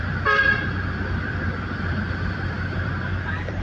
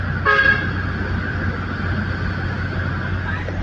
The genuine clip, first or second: second